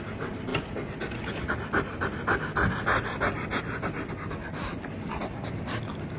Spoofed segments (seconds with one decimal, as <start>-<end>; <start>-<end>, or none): none